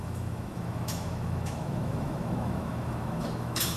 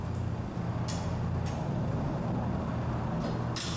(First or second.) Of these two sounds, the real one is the second